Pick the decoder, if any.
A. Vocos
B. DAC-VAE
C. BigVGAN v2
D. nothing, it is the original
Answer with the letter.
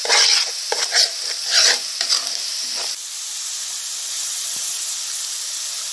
D